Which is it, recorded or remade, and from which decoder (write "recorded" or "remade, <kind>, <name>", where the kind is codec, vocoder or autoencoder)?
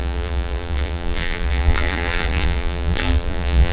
remade, vocoder, BigVGAN v2